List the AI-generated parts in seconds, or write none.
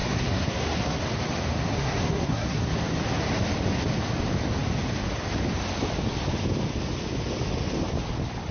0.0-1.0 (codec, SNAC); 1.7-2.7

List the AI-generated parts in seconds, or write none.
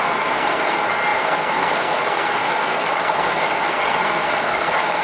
0.0-5.0 (codec, SNAC)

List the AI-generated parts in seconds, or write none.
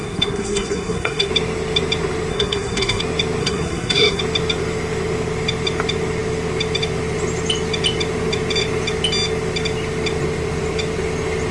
0.0-1.3 (codec, SNAC); 2.3-3.0; 3.4-4.2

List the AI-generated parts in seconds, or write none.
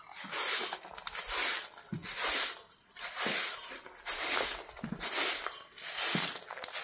2.0-5.5 (vocoder, BigVGAN v2)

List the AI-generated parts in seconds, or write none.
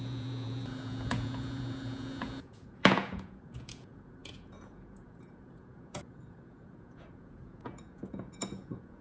0.0-9.0 (vocoder, Vocos)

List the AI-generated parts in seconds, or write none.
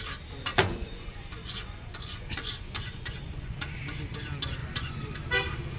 0.5-4.0 (vocoder, Vocos); 4.6-5.2